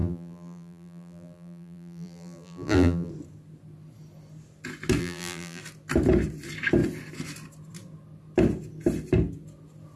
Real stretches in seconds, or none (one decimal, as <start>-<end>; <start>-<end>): 3.1-5.0; 5.6-10.0